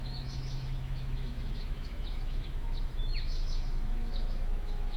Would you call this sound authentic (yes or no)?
no